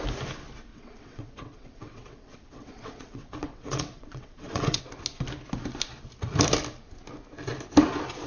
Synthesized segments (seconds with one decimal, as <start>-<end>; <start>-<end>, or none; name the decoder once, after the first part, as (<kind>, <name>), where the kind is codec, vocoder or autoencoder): 0.7-4.8 (vocoder, WaveNeXt)